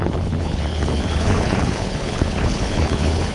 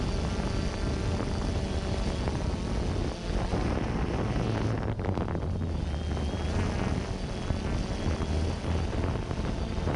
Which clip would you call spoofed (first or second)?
first